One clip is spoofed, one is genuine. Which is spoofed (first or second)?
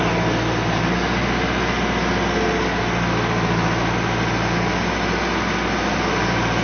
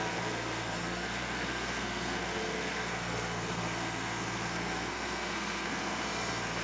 second